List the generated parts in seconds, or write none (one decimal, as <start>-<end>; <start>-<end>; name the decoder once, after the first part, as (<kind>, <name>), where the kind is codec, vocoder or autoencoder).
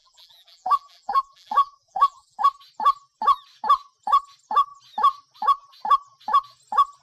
0.0-2.4 (vocoder, BigVGAN v2)